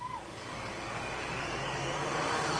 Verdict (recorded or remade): remade